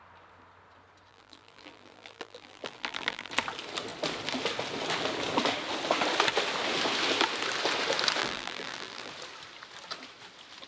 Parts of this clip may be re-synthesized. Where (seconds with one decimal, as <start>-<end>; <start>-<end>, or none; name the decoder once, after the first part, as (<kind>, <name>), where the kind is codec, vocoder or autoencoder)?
1.1-3.3 (vocoder, BigVGAN v2); 8.2-9.1